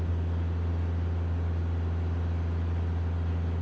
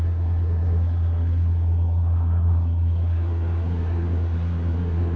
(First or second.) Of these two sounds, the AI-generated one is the second